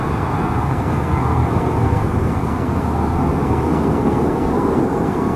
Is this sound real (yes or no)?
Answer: no